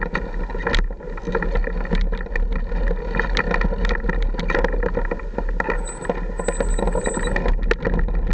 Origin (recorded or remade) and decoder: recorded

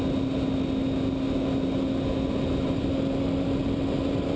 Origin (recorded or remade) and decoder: recorded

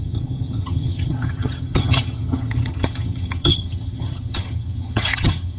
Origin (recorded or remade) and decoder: remade, vocoder, HiFi-GAN